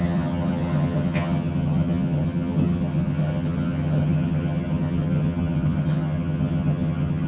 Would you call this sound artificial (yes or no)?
yes